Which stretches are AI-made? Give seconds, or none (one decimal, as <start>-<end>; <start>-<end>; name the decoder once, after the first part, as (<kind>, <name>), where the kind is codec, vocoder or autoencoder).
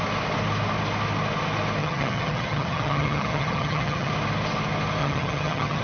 1.8-4.1 (vocoder, HiFi-GAN); 5.0-5.8